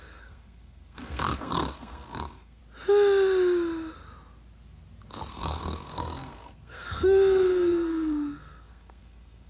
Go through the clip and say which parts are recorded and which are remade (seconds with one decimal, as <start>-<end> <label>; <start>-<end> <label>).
0.0-2.6 remade; 2.6-5.3 recorded; 5.3-9.5 remade